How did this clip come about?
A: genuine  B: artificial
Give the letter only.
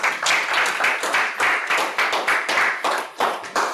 B